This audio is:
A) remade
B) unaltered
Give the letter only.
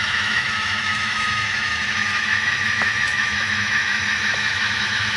A